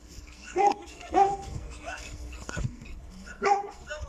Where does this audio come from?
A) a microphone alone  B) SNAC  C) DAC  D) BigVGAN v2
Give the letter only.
B